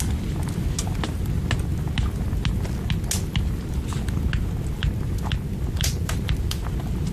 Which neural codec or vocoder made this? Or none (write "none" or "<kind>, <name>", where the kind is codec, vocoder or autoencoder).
none